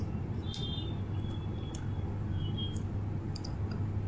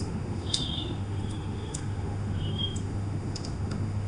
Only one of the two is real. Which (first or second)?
first